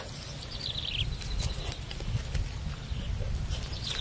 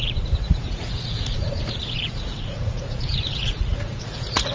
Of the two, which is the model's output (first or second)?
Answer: second